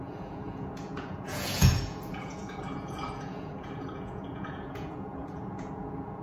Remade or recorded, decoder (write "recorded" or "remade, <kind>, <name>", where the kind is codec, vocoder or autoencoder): remade, vocoder, Vocos